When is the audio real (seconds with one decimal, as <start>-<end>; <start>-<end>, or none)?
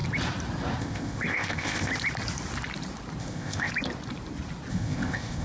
0.0-0.8; 1.9-3.2; 3.7-4.7